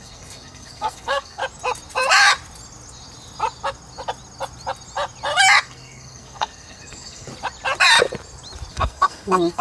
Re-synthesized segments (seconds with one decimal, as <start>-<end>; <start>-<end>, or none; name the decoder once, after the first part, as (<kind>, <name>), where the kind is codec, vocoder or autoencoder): 0.0-1.4 (codec, SNAC); 5.6-7.3; 8.7-9.6